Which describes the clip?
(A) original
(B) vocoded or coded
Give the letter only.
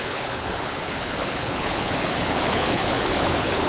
B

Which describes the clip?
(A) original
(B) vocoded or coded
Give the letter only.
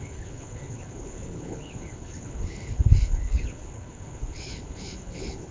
B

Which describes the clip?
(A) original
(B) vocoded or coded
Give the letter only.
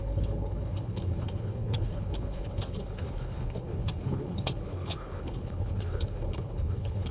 B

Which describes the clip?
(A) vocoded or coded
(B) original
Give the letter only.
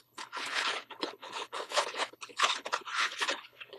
A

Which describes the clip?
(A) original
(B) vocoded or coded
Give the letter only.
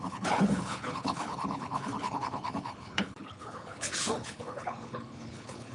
B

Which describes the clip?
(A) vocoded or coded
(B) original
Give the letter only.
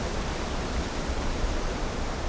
B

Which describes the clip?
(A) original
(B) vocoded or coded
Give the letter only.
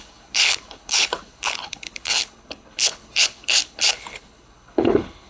B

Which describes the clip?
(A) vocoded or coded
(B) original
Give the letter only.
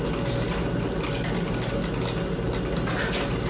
B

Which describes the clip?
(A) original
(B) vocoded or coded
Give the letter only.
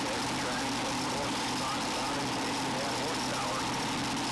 A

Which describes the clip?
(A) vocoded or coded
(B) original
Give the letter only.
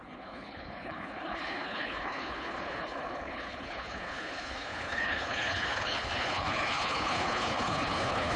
A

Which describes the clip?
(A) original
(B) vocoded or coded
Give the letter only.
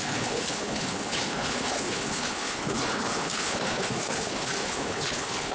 B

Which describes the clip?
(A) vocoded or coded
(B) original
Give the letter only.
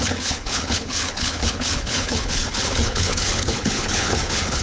A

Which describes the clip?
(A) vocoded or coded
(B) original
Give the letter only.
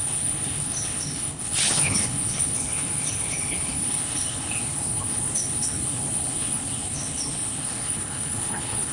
A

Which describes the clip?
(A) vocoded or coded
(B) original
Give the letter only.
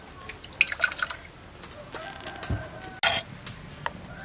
B